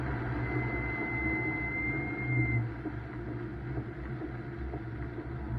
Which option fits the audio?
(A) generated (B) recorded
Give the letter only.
B